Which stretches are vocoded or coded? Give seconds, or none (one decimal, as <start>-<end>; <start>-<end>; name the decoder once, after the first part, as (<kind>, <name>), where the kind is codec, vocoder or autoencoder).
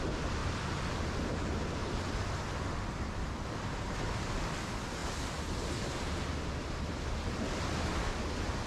none